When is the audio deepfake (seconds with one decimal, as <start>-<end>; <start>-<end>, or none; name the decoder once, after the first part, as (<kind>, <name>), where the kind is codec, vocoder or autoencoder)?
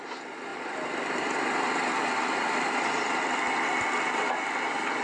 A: 0.5-3.5 (vocoder, BigVGAN v2)